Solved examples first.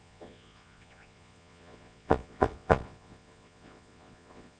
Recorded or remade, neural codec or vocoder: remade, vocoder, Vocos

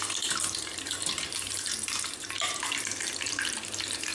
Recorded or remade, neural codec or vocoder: remade, vocoder, BigVGAN v2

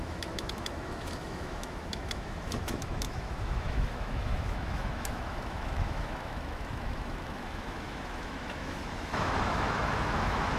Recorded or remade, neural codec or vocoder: remade, autoencoder, DAC-VAE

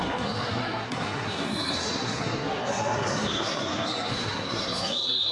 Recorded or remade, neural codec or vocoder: remade, codec, SNAC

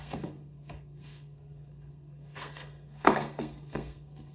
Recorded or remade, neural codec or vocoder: remade, codec, SNAC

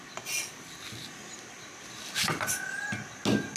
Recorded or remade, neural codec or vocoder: recorded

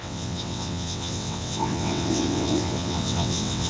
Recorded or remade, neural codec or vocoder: remade, vocoder, WaveNeXt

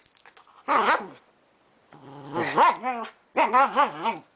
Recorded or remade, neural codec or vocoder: recorded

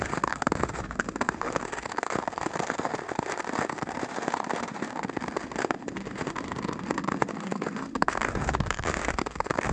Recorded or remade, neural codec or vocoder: remade, autoencoder, DAC-VAE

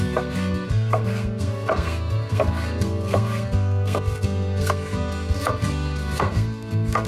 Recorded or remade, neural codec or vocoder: remade, codec, SNAC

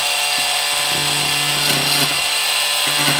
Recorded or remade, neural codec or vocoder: recorded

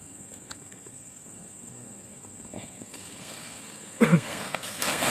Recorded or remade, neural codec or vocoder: remade, codec, SNAC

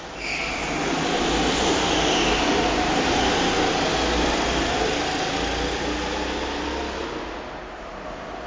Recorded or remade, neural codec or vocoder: recorded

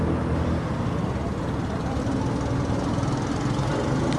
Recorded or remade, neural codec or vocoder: recorded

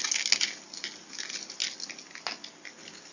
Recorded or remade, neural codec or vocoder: recorded